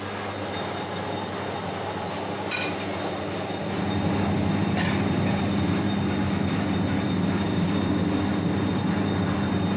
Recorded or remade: recorded